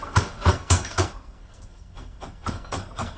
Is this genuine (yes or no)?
no